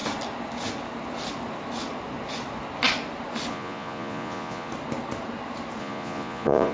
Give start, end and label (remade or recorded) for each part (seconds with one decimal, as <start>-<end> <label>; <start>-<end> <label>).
0.0-3.5 recorded; 3.5-4.7 remade; 4.7-5.8 recorded; 5.8-6.7 remade